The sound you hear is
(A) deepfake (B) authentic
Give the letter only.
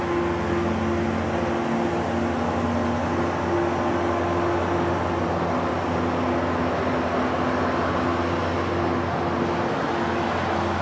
B